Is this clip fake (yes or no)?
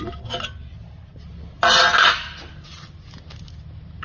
no